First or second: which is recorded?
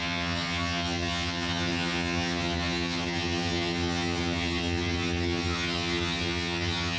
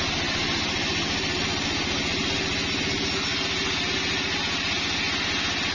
second